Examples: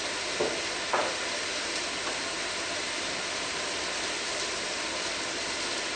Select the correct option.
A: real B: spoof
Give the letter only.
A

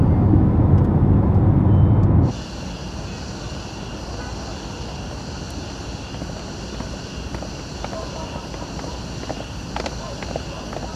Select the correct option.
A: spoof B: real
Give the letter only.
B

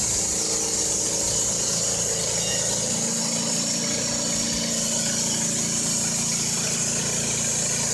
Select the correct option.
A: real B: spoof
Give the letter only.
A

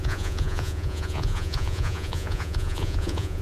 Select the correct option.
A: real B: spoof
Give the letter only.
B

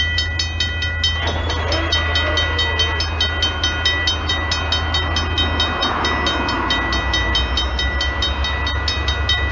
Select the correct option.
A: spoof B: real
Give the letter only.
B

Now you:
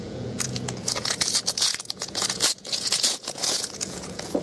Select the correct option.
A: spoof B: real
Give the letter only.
A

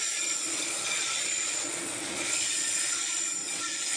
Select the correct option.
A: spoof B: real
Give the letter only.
A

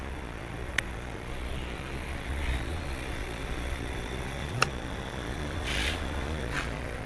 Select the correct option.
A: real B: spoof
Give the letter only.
B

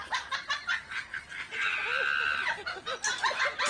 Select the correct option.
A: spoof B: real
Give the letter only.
B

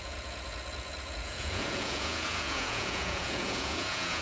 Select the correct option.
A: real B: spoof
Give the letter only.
B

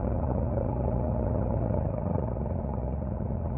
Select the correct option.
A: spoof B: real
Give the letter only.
A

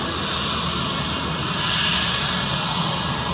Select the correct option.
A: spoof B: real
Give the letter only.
B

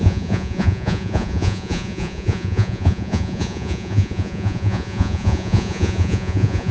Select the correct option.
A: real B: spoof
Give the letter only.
B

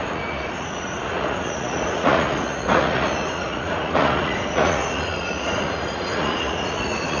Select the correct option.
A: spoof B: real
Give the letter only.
A